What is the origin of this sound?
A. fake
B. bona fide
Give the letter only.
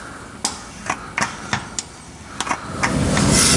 B